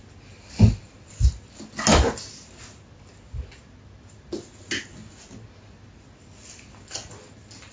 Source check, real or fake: real